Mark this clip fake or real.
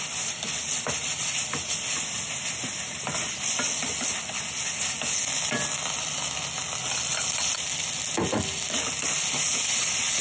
real